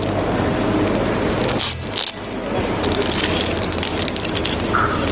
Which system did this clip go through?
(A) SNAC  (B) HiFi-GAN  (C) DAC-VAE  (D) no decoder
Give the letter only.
D